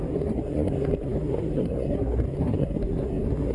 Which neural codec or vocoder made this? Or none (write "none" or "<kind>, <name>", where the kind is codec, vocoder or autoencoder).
codec, SNAC